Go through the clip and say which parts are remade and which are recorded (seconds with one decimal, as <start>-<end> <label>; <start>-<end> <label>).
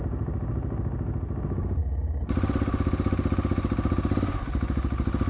0.0-5.3 recorded